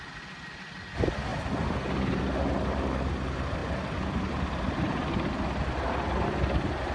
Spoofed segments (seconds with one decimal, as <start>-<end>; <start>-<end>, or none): none